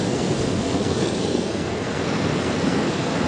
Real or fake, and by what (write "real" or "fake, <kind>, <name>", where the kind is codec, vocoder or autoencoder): fake, codec, SNAC